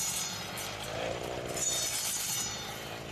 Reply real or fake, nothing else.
real